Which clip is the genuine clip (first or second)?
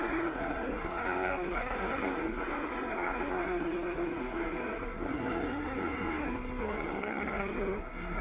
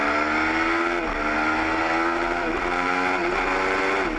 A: second